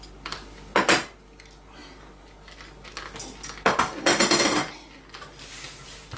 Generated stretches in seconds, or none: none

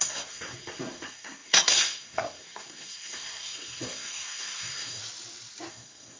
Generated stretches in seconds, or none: 0.0-5.0 (codec, SNAC); 5.7-6.2